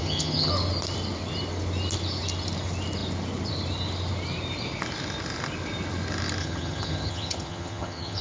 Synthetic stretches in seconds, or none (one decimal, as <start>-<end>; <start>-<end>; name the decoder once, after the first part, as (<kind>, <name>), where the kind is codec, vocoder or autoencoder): 0.0-0.5 (vocoder, HiFi-GAN); 6.4-8.2